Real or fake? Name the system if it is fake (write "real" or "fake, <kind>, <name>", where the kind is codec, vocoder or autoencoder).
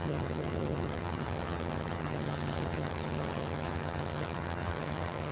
fake, vocoder, HiFi-GAN